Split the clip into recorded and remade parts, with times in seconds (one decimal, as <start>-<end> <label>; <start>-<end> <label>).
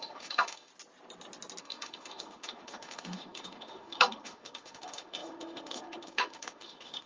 0.0-0.7 remade; 0.7-1.6 recorded; 1.6-7.1 remade